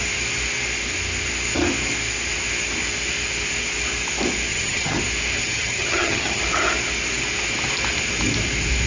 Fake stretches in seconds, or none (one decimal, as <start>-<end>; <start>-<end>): 4.5-5.0; 5.4-6.4